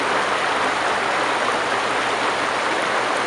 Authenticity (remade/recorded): recorded